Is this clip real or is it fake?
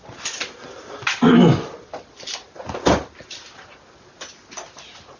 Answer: real